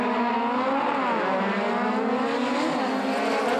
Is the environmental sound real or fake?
real